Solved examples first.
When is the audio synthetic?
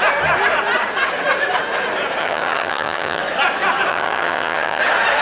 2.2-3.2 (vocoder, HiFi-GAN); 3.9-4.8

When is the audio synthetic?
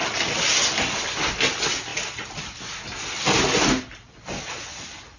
none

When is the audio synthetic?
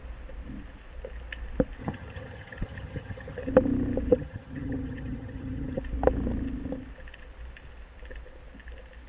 1.8-3.5 (vocoder, HiFi-GAN); 4.1-5.8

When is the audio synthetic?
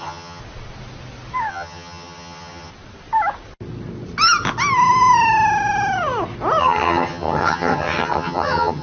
0.0-0.4 (vocoder, HiFi-GAN); 1.5-2.7; 6.6-8.8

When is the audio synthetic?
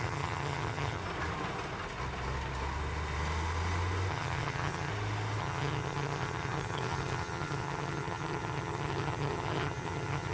0.0-1.0 (vocoder, HiFi-GAN); 4.1-4.9; 5.4-10.3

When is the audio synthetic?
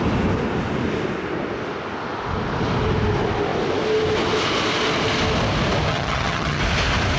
5.9-6.6 (vocoder, HiFi-GAN)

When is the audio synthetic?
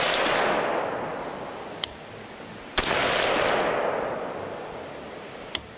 none